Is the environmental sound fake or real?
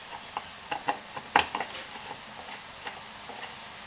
real